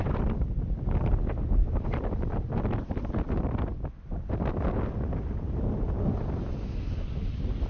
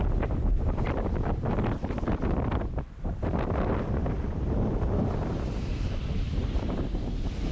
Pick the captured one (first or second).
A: first